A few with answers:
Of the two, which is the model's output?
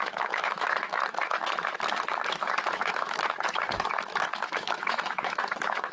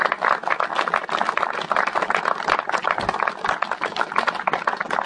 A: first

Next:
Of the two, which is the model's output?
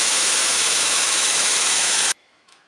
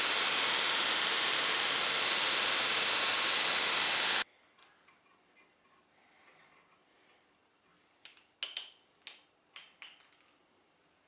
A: first